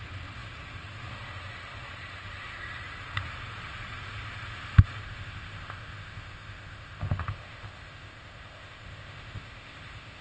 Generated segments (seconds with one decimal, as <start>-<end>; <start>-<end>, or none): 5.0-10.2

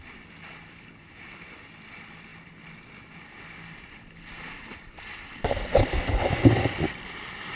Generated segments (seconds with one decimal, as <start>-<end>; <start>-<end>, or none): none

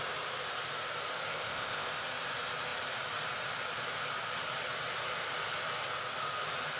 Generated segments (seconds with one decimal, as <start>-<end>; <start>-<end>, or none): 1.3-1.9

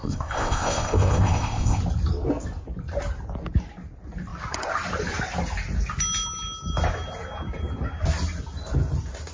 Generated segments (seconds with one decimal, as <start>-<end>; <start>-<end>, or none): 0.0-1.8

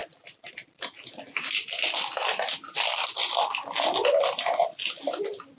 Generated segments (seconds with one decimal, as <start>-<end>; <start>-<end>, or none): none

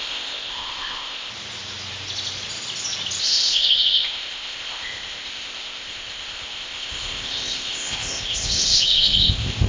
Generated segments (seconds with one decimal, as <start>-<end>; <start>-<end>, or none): 0.0-1.3; 3.2-9.7